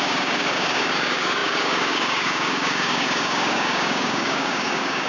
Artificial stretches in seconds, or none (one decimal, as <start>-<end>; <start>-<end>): 0.0-5.1